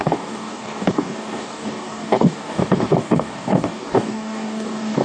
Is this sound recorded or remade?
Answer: remade